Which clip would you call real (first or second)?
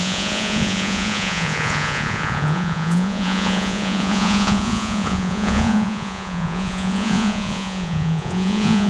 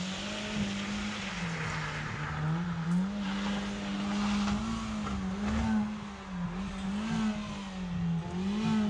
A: second